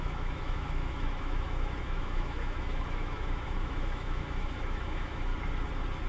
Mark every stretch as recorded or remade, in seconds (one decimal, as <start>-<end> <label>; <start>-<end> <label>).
0.0-5.3 remade; 5.3-6.1 recorded